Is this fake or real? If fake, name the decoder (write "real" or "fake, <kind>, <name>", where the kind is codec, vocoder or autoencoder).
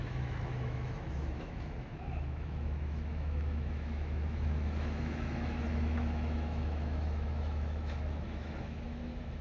fake, autoencoder, DAC-VAE